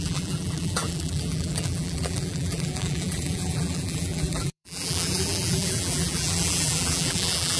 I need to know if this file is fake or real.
fake